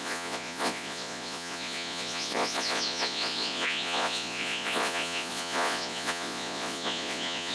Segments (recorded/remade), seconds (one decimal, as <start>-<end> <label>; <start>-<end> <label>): 0.0-7.5 remade